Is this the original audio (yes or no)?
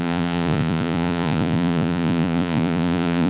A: no